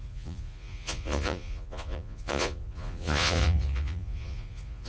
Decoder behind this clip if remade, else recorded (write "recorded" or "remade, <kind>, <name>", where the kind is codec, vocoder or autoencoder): remade, vocoder, Vocos